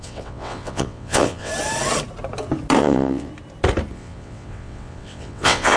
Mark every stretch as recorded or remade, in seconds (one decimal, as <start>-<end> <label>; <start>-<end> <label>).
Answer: 0.0-1.5 remade; 1.5-2.8 recorded; 2.8-3.3 remade; 3.3-3.9 recorded; 3.9-5.8 remade